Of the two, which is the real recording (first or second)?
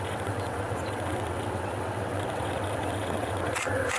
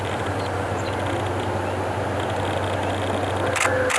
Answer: second